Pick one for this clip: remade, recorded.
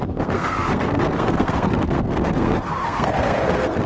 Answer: remade